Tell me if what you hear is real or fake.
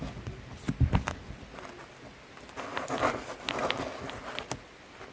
real